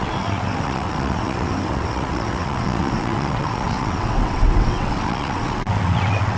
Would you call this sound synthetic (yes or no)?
yes